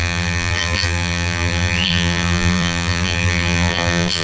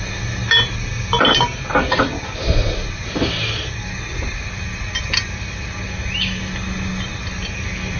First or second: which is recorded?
second